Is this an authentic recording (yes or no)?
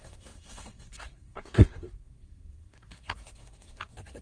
no